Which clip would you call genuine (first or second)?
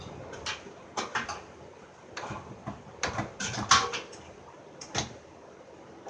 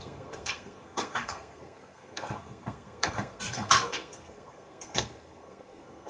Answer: first